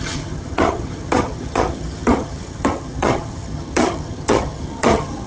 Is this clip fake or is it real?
fake